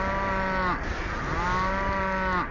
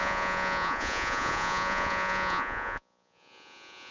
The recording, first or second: first